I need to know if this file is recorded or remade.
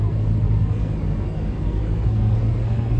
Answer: remade